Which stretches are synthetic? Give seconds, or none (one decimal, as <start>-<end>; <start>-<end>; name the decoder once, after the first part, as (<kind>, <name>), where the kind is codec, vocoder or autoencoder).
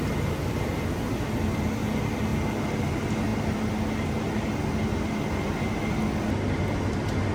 none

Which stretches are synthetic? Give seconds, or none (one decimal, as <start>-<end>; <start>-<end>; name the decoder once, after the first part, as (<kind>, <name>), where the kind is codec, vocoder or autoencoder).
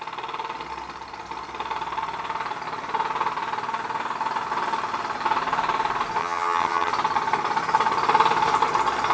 6.2-6.9 (vocoder, HiFi-GAN)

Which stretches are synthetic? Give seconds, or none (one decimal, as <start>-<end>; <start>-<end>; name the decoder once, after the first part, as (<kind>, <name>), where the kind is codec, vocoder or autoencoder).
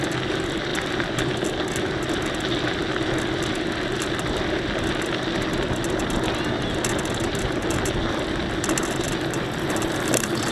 none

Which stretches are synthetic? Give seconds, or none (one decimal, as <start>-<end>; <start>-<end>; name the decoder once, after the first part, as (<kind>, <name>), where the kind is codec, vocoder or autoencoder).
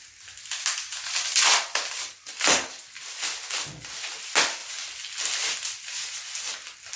0.9-3.8 (vocoder, BigVGAN v2); 4.6-5.2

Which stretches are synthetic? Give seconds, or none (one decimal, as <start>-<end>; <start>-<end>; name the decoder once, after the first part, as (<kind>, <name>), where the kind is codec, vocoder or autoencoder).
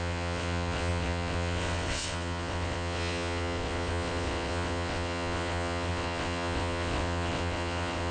0.0-8.1 (vocoder, WaveNeXt)